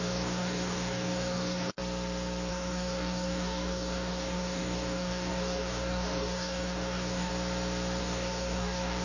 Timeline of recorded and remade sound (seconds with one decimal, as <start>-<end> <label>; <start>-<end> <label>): 0.0-1.8 remade; 1.8-2.5 recorded; 2.5-7.3 remade; 7.3-8.0 recorded; 8.0-9.0 remade